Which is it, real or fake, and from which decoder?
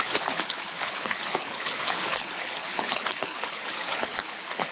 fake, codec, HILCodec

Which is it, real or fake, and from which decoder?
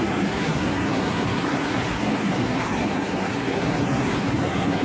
fake, codec, SNAC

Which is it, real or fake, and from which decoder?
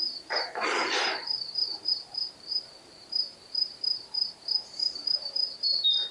fake, vocoder, BigVGAN v2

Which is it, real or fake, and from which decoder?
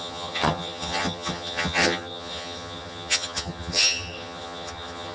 fake, vocoder, HiFi-GAN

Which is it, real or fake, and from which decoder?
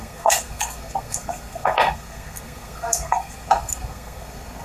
fake, codec, SNAC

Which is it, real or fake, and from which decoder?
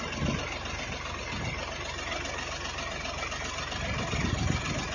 real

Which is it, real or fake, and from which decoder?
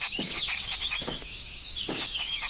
fake, codec, DAC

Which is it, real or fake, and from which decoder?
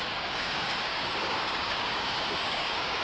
fake, codec, DAC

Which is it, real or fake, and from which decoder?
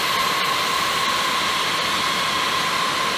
real